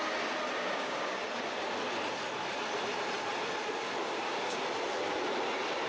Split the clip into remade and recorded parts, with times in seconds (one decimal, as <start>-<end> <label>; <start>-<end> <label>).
0.0-0.6 recorded; 0.6-1.2 remade; 1.2-4.0 recorded; 4.0-4.6 remade; 4.6-5.9 recorded